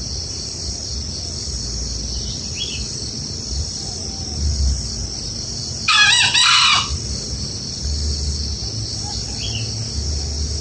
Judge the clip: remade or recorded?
recorded